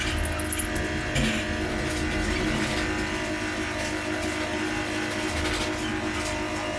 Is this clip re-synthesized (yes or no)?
no